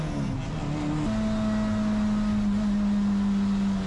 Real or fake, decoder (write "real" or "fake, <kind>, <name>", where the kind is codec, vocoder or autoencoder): real